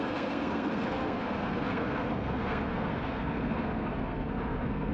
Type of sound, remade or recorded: remade